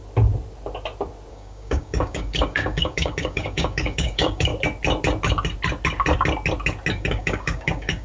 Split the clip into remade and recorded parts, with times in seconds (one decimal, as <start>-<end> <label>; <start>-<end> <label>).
0.0-1.3 recorded; 1.3-4.5 remade; 4.5-6.9 recorded; 6.9-8.0 remade